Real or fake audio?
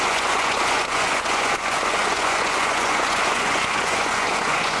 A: fake